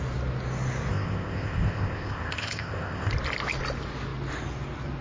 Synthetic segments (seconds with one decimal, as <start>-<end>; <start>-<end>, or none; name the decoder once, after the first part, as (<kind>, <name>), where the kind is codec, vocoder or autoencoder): 0.9-3.1 (codec, ZipCodec)